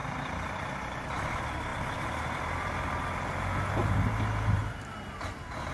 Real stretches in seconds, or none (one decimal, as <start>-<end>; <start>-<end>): 0.0-1.7; 2.4-3.8; 4.6-5.7